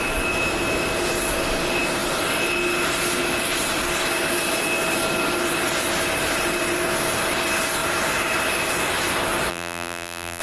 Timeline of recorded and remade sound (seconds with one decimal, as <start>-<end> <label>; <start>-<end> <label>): 0.0-9.5 recorded; 9.5-10.4 remade